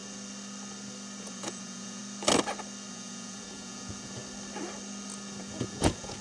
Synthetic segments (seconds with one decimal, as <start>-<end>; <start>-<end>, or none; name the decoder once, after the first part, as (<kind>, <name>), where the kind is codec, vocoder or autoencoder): 1.2-2.0 (vocoder, Vocos); 2.9-4.2; 5.4-6.2